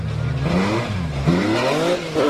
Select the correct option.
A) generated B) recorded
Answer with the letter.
B